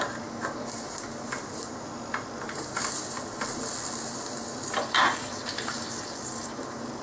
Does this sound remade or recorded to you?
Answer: recorded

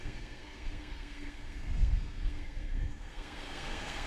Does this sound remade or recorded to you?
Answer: remade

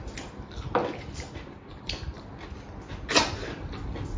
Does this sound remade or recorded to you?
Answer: recorded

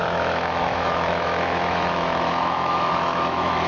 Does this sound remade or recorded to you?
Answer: remade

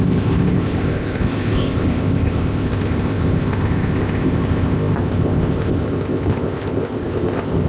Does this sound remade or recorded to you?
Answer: remade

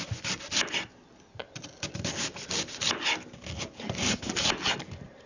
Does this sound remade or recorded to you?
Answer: recorded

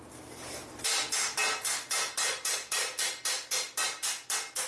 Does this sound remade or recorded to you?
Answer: recorded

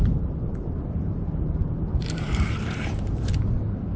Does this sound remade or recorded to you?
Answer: remade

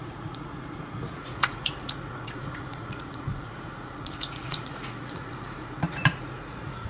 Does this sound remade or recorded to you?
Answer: remade